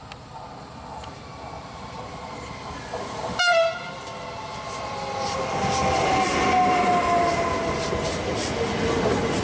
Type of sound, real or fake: real